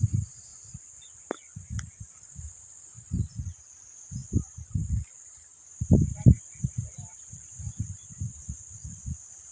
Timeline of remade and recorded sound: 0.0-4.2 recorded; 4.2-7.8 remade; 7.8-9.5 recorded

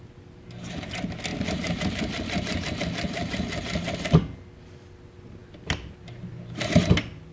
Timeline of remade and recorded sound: 0.0-1.3 recorded; 1.3-2.8 remade; 2.8-7.3 recorded

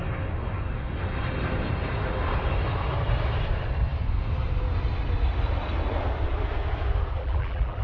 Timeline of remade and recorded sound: 0.0-7.2 recorded; 7.2-7.8 remade

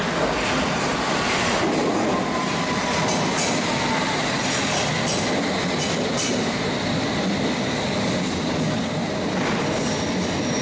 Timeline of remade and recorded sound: 0.0-0.9 recorded; 0.9-1.9 remade; 1.9-10.6 recorded

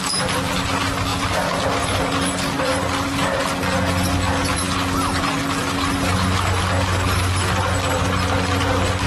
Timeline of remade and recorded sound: 0.0-9.1 recorded